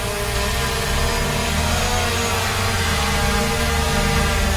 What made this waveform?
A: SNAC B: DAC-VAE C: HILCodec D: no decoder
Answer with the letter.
D